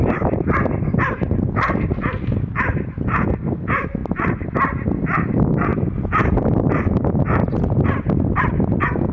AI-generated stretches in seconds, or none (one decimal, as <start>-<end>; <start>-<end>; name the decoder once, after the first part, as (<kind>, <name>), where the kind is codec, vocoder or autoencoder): 5.7-6.9 (vocoder, BigVGAN v2)